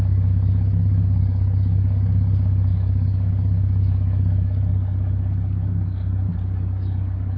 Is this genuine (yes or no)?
no